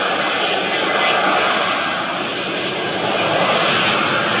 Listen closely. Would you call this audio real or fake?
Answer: real